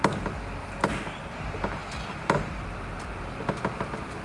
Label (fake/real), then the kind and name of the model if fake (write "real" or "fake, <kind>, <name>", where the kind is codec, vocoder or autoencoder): real